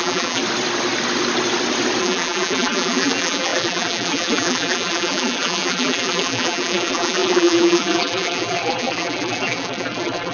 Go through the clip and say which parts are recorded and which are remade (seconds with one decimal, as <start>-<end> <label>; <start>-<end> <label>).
0.0-0.4 remade; 0.4-2.0 recorded; 2.0-10.3 remade